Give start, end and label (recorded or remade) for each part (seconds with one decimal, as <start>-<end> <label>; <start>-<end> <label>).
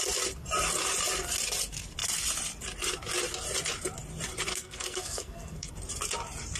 0.0-4.5 recorded; 4.5-5.7 remade; 5.7-6.6 recorded